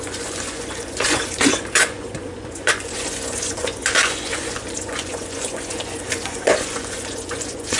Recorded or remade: remade